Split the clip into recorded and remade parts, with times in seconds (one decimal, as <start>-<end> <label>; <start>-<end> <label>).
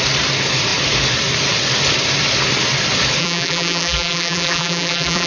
0.0-3.2 recorded; 3.2-5.3 remade